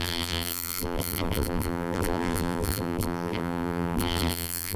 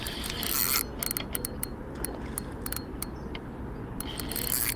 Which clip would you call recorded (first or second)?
second